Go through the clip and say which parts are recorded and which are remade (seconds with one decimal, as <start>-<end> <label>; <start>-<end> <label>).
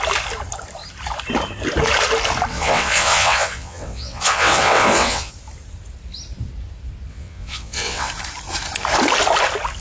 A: 0.0-2.5 recorded; 2.5-5.3 remade; 5.3-7.1 recorded; 7.1-8.1 remade; 8.1-9.8 recorded